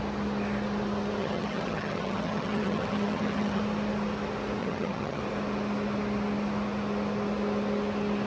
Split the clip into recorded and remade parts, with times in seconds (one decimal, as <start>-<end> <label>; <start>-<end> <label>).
0.0-1.2 recorded; 1.2-3.6 remade; 3.6-4.6 recorded; 4.6-5.2 remade; 5.2-8.3 recorded